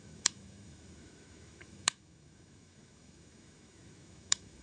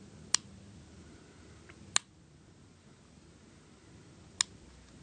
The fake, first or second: first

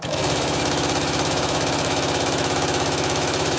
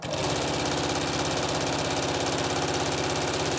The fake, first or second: first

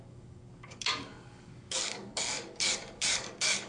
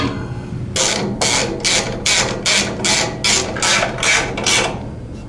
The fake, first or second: first